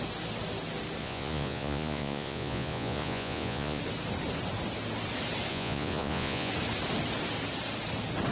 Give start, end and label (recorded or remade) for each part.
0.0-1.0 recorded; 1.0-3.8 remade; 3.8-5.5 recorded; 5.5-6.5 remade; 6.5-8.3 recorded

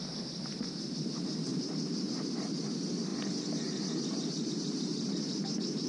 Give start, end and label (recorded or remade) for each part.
0.0-5.9 recorded

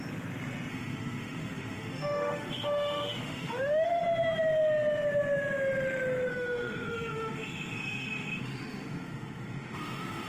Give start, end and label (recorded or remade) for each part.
0.0-0.7 recorded; 0.7-4.0 remade; 4.0-6.3 recorded; 6.3-10.3 remade